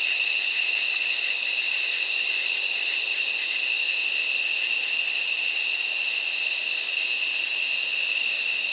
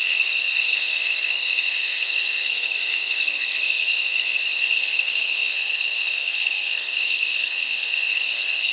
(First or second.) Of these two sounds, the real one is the first